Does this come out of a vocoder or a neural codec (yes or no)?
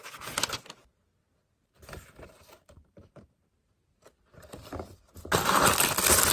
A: no